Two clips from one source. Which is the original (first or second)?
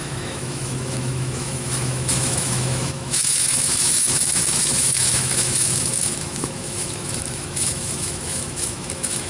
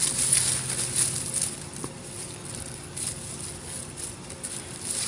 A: second